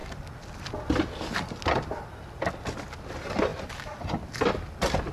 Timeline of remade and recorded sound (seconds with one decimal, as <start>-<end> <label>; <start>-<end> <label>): 0.0-5.1 recorded

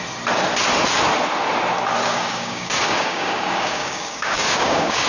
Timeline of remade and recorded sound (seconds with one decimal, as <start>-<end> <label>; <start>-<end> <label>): 0.0-2.0 recorded; 2.0-5.1 remade

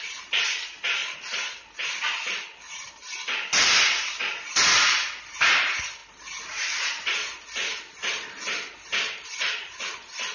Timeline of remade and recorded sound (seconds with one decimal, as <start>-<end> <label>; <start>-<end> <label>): 0.0-1.0 remade; 1.0-2.6 recorded; 2.6-10.3 remade

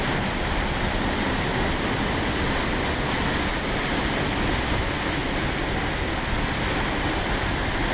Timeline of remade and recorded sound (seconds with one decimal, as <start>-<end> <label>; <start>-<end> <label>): 0.0-7.9 recorded

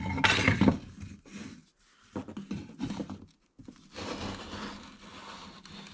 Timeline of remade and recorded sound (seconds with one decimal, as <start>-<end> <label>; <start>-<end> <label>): 0.0-5.9 recorded

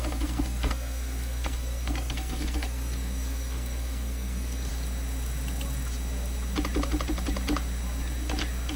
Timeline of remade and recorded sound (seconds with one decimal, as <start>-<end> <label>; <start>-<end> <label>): 0.0-4.7 remade; 4.7-8.8 recorded

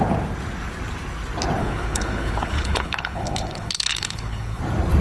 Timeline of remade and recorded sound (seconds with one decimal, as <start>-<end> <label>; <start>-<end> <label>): 0.0-1.6 recorded; 1.6-4.6 remade; 4.6-5.0 recorded

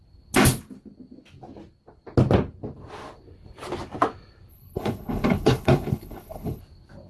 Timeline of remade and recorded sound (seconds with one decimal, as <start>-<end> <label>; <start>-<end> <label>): 0.0-4.5 recorded; 4.5-6.6 remade; 6.6-7.1 recorded